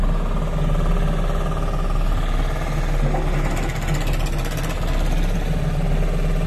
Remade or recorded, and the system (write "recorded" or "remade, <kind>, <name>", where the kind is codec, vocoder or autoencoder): recorded